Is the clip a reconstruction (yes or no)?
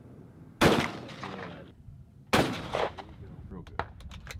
no